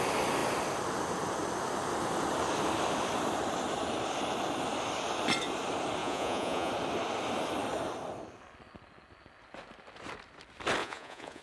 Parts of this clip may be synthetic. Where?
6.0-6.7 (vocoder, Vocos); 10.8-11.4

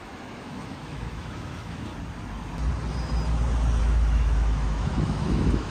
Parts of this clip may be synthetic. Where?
0.0-1.9 (autoencoder, DAC-VAE); 3.8-5.7